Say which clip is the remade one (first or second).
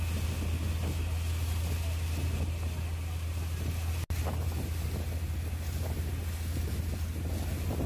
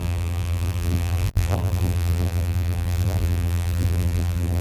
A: second